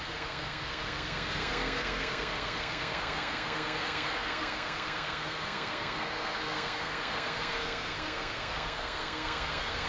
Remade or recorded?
remade